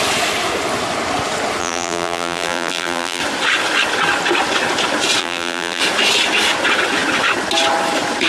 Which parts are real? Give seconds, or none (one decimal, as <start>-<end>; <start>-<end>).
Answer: 0.0-1.6; 3.2-5.2; 5.8-8.3

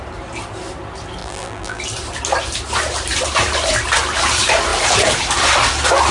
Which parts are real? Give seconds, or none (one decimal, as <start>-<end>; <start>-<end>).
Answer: 0.0-1.2; 1.8-6.1